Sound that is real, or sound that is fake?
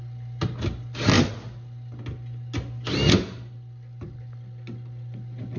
real